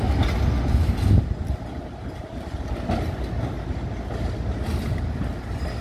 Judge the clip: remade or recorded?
recorded